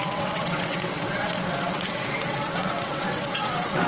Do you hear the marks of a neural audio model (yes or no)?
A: yes